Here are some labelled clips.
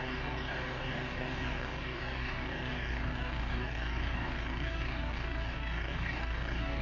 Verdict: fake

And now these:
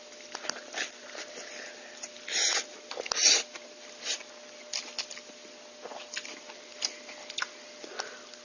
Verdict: real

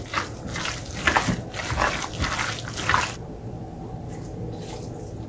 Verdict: real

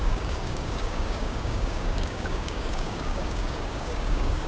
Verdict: fake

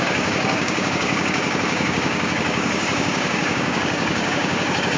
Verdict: fake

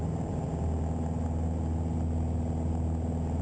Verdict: real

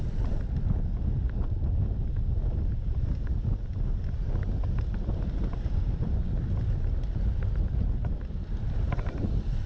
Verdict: real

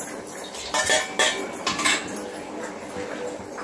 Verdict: real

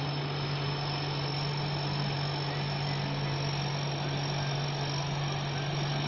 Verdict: real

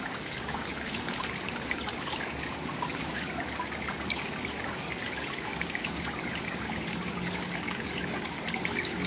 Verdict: fake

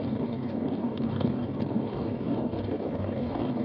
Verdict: fake